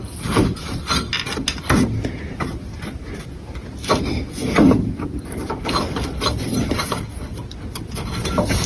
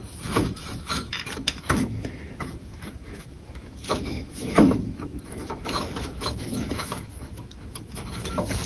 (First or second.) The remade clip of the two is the second